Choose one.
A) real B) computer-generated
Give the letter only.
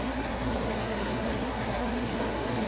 B